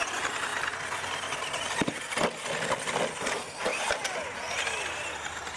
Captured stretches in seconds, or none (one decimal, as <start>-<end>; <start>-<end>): 0.0-5.6